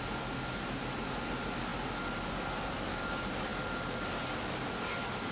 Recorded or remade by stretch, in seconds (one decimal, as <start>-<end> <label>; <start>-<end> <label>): 0.0-5.3 recorded